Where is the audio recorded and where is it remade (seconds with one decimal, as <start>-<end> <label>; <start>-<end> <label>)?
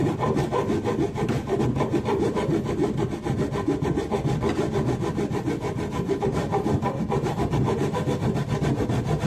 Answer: 0.0-9.3 recorded